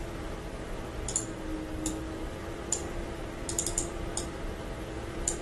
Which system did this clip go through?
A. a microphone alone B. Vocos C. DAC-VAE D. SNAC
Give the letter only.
A